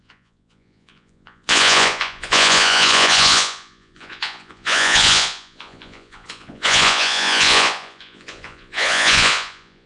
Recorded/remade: remade